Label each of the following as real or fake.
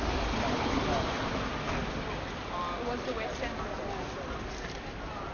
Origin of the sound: real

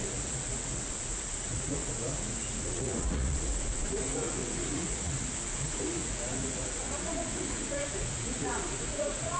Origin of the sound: fake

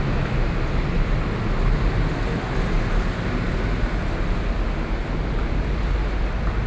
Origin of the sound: real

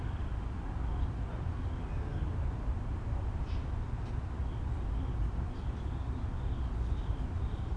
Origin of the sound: real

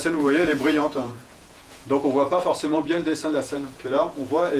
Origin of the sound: fake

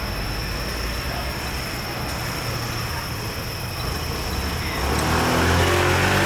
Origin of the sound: real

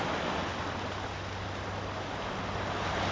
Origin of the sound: real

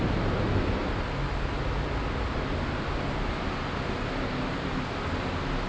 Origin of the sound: real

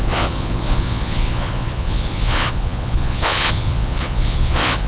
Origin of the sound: fake